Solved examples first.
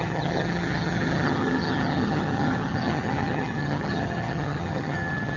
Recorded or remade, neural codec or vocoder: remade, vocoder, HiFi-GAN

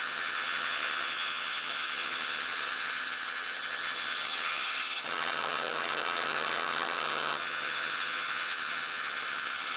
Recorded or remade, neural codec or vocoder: remade, vocoder, HiFi-GAN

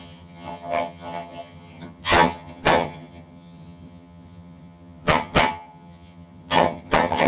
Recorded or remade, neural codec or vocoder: remade, vocoder, HiFi-GAN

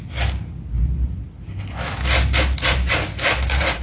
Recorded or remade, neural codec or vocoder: recorded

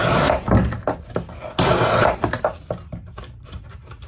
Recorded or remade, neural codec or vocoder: recorded